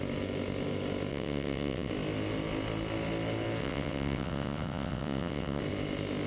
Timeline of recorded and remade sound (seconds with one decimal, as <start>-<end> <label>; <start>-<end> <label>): 0.0-1.1 recorded; 1.1-1.9 remade; 1.9-3.6 recorded; 3.6-5.6 remade; 5.6-6.3 recorded